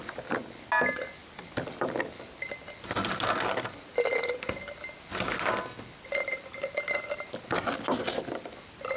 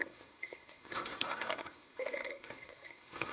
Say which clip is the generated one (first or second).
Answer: second